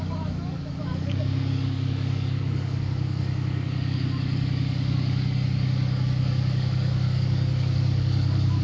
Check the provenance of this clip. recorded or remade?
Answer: remade